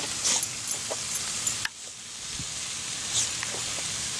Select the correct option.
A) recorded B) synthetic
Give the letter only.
A